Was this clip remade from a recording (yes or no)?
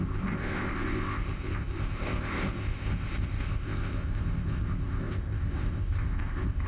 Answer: yes